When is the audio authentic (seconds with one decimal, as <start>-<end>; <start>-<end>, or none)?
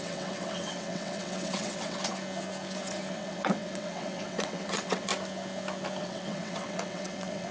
2.0-3.1; 5.1-6.0